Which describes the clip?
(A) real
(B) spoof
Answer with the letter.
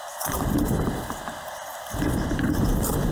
B